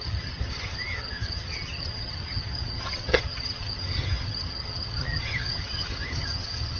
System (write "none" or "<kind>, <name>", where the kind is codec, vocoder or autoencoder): vocoder, HiFi-GAN